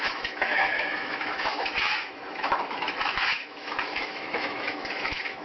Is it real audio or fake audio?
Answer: fake